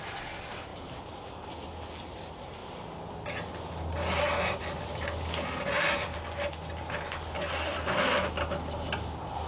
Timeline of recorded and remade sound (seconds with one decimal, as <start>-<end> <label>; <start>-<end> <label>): 0.0-9.5 recorded